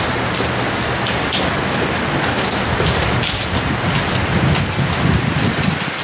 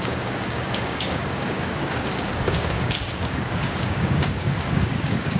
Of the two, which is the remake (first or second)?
second